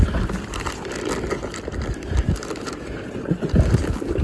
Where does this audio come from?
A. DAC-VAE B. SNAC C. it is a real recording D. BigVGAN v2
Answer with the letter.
C